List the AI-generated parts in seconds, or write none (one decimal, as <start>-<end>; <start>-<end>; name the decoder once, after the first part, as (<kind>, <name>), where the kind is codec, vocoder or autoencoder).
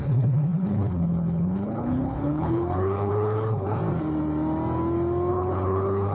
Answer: 0.0-3.8 (codec, HILCodec); 5.3-6.1